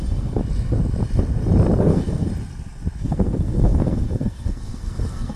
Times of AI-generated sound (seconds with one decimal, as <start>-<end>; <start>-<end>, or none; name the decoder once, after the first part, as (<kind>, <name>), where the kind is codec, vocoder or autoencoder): 0.0-0.4 (codec, SNAC); 1.8-2.3; 3.0-5.4